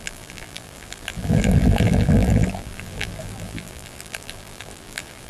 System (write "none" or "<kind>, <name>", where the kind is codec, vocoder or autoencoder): vocoder, BigVGAN v2